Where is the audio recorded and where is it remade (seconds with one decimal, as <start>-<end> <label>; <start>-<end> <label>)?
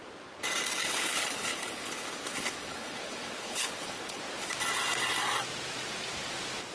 0.0-0.8 recorded; 0.8-4.2 remade; 4.2-6.7 recorded